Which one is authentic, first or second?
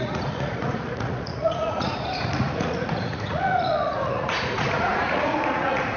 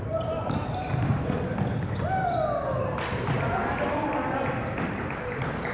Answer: second